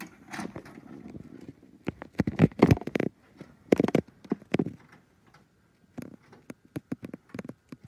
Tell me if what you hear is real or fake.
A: real